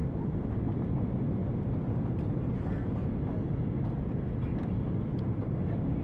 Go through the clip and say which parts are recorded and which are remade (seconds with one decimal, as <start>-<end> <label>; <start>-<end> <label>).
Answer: 0.0-0.5 recorded; 0.5-1.4 remade; 1.4-3.8 recorded; 3.8-6.0 remade